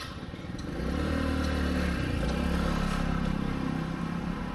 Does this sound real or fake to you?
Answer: real